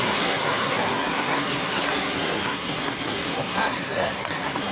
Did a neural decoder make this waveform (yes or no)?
yes